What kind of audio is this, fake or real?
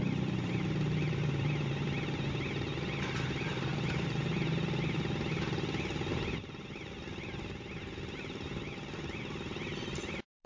fake